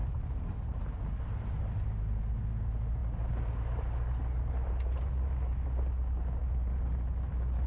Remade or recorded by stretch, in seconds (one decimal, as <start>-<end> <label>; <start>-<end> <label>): 0.0-7.7 recorded